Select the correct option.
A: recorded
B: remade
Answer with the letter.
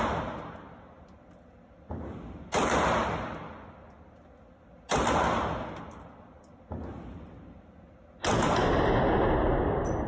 A